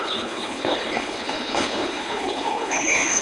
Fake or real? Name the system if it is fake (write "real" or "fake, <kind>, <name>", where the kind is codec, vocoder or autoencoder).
fake, codec, HILCodec